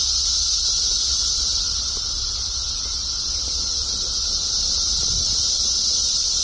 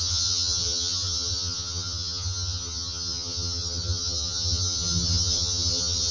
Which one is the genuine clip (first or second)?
first